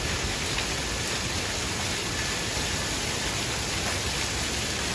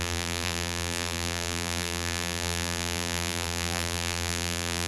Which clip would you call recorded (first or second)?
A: first